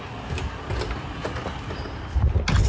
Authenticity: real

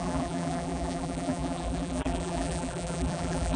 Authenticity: fake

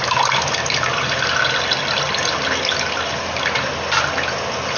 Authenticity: real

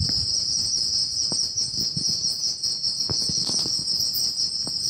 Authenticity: fake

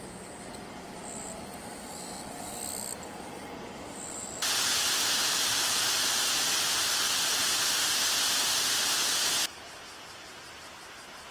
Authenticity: real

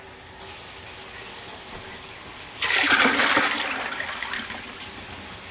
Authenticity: real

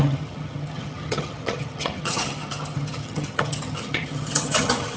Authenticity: fake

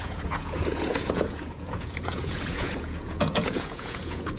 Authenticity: fake